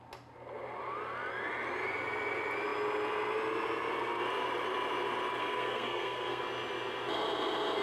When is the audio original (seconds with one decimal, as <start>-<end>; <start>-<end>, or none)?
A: 0.0-5.4; 6.4-7.8